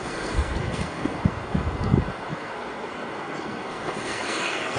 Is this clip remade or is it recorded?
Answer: remade